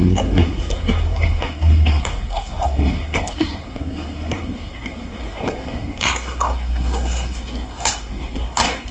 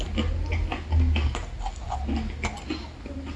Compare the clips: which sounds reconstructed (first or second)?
first